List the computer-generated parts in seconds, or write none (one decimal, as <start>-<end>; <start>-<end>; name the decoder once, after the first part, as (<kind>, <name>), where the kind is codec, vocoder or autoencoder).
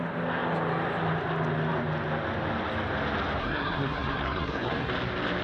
3.4-4.9 (codec, SNAC)